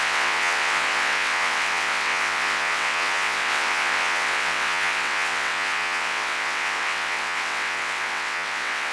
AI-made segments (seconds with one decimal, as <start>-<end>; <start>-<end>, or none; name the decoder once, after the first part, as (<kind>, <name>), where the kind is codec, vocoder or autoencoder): 0.0-8.9 (vocoder, WaveNeXt)